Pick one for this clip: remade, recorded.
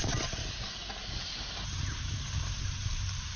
remade